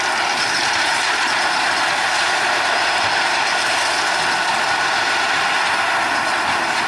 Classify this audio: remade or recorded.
recorded